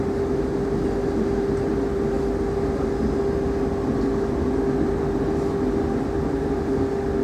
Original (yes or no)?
yes